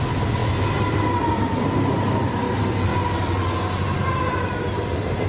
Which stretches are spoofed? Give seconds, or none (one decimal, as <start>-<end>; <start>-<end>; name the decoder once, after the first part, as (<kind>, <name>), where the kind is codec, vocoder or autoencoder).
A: none